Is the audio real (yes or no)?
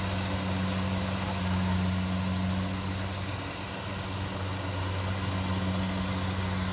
yes